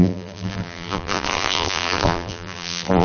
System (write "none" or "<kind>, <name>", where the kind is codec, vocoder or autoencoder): vocoder, BigVGAN v2